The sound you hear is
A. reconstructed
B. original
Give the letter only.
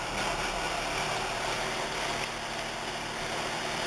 B